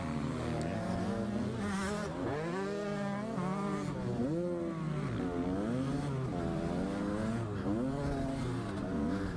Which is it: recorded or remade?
recorded